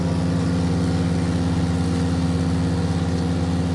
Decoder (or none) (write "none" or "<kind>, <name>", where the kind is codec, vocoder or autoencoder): none